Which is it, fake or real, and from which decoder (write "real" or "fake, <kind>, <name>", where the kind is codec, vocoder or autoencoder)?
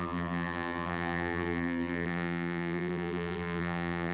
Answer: fake, vocoder, BigVGAN v2